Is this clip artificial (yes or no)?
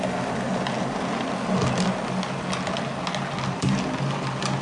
no